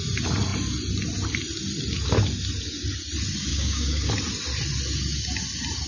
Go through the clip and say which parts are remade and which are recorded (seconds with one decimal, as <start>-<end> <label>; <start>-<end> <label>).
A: 0.0-3.5 recorded; 3.5-4.1 remade; 4.1-5.9 recorded